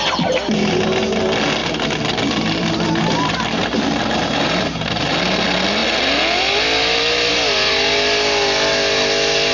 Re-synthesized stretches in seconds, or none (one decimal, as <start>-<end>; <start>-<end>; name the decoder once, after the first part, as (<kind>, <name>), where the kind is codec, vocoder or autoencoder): 1.6-5.2 (vocoder, BigVGAN v2)